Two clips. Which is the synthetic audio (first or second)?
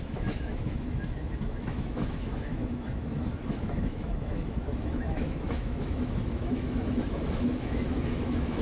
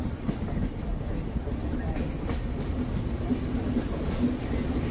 first